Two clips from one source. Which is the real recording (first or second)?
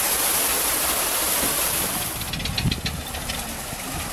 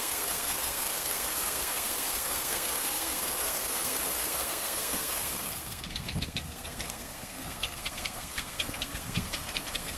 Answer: first